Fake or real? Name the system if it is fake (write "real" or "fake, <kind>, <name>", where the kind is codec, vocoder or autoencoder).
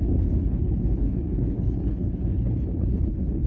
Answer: fake, codec, HILCodec